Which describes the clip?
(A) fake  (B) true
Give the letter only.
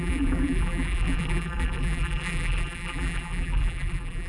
A